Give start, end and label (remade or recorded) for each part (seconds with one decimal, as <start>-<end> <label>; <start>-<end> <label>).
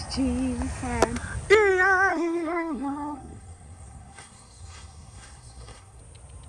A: 0.0-2.1 recorded; 2.1-6.0 remade; 6.0-6.5 recorded